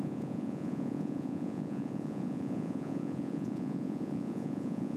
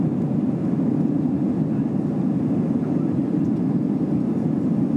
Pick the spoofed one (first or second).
first